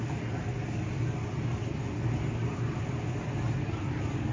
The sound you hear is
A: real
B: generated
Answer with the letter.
A